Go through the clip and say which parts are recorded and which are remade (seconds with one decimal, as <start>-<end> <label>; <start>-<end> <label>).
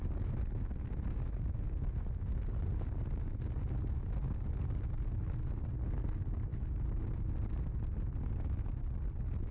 0.0-9.5 recorded